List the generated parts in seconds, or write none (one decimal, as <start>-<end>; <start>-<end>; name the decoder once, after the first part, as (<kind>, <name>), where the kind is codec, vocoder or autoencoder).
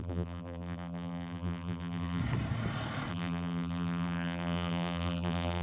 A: 0.0-2.2 (vocoder, BigVGAN v2); 3.1-5.6